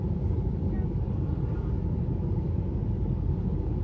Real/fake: fake